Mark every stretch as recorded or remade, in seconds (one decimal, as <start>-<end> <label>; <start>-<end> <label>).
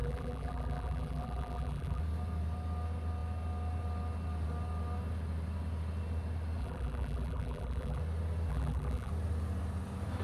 0.0-2.0 remade; 2.0-6.6 recorded; 6.6-8.0 remade; 8.0-8.5 recorded; 8.5-9.1 remade; 9.1-10.2 recorded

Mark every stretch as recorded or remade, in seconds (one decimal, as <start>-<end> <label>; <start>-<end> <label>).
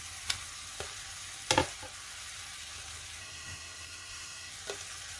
0.0-3.2 recorded; 3.2-4.5 remade; 4.5-5.2 recorded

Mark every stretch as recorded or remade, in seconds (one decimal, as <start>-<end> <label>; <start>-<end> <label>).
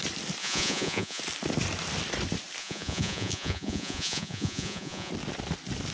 0.0-0.4 recorded; 0.4-1.2 remade; 1.2-2.6 recorded; 2.6-5.1 remade; 5.1-5.9 recorded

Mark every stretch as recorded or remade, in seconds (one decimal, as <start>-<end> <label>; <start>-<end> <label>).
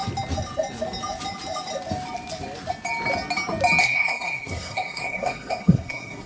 0.0-3.8 recorded; 3.8-6.3 remade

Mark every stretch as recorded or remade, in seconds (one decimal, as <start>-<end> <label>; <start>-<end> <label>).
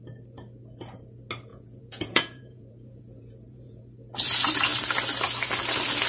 0.0-1.5 recorded; 1.5-3.8 remade; 3.8-6.1 recorded